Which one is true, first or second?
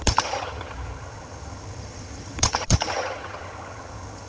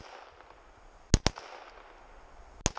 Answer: second